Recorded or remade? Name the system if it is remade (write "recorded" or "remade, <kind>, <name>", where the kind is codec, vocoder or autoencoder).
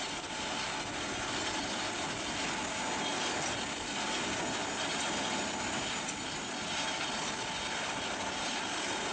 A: recorded